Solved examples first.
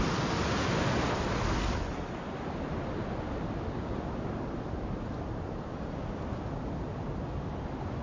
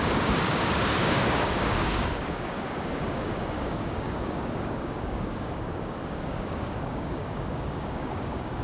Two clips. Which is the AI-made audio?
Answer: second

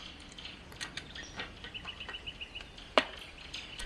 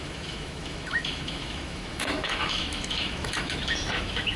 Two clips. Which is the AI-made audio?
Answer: second